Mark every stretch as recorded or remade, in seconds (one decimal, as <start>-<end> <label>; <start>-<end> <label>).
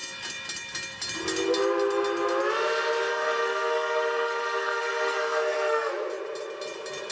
0.0-3.1 recorded; 3.1-5.9 remade; 5.9-7.1 recorded